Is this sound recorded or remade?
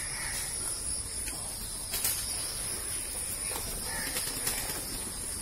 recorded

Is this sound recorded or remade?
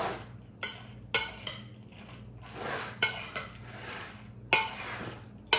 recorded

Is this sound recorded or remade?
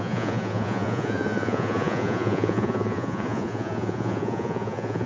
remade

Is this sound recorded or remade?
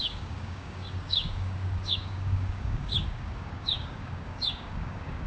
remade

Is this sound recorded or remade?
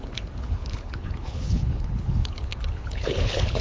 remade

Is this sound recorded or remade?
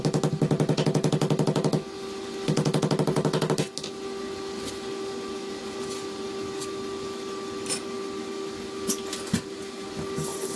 recorded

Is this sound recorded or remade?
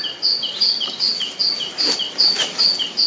recorded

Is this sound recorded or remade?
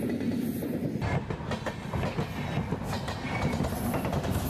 recorded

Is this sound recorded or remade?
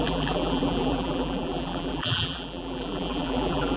remade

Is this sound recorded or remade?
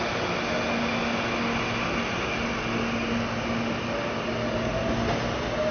recorded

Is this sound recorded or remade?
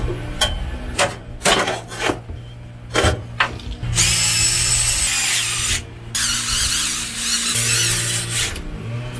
recorded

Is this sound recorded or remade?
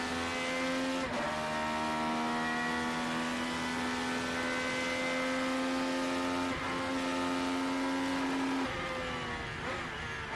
recorded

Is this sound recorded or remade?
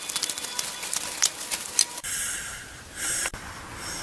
recorded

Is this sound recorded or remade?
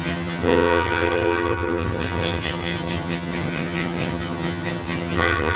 remade